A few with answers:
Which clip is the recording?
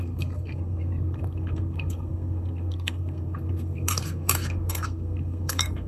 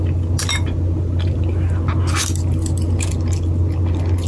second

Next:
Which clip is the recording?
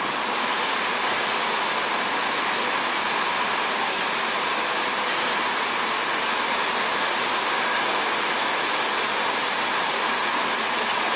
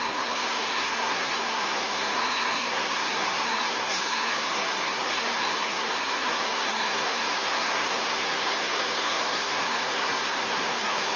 first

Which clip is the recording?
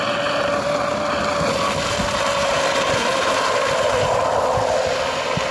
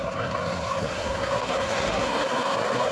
first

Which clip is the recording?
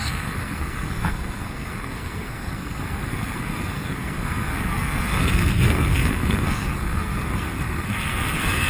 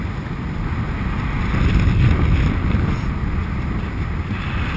second